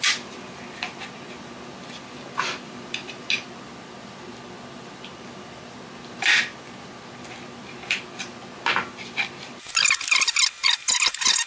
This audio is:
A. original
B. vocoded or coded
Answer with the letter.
A